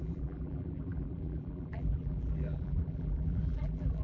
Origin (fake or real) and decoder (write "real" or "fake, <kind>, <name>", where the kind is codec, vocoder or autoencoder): fake, vocoder, BigVGAN v2